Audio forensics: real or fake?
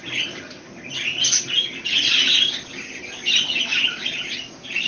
real